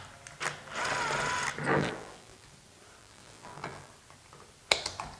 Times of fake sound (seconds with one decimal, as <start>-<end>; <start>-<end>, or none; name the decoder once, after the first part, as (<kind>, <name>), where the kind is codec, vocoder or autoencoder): 1.7-2.5 (vocoder, BigVGAN v2); 3.0-3.9